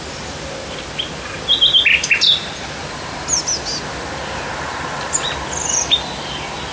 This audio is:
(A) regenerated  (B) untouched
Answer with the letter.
B